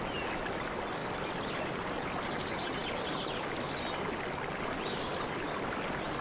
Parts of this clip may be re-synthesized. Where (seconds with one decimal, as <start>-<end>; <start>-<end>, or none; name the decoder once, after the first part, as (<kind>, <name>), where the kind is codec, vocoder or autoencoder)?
none